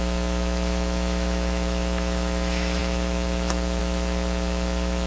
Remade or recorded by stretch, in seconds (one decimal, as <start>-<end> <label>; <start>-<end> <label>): 0.0-5.1 remade